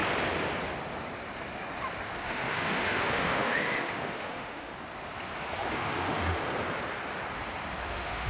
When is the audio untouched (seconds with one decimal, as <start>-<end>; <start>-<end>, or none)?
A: 0.0-2.2; 4.7-5.4; 6.4-7.8